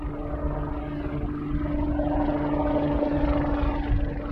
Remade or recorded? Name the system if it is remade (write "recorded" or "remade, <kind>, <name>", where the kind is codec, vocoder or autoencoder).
recorded